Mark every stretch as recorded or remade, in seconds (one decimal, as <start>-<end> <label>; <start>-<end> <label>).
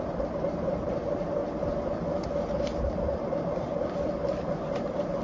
0.0-1.4 remade; 1.4-4.5 recorded; 4.5-5.2 remade